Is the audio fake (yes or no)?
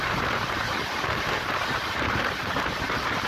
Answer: yes